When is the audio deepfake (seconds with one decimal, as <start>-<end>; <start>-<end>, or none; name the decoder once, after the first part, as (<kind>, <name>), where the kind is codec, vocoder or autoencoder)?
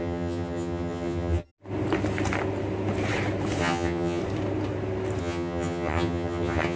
0.0-1.5 (vocoder, HiFi-GAN); 3.6-4.2; 5.2-6.8